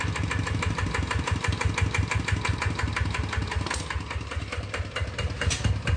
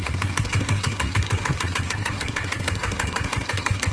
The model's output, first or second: second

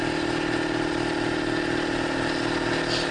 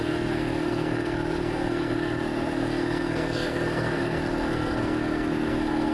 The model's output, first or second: second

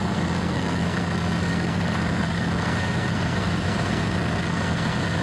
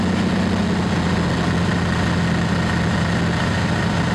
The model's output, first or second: first